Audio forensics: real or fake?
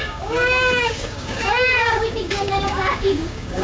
fake